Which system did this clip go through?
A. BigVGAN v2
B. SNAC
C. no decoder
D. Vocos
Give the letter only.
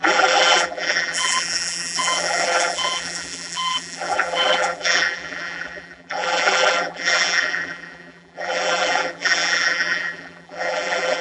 A